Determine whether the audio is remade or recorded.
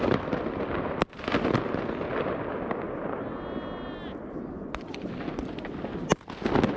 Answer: recorded